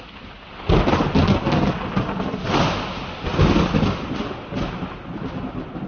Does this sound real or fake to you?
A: real